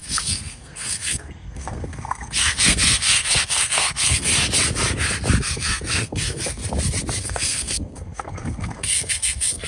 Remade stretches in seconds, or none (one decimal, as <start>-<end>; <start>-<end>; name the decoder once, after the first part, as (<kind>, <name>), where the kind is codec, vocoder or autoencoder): 0.0-4.3 (codec, SNAC); 5.4-6.6; 7.2-9.7